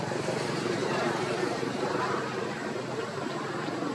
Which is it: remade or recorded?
remade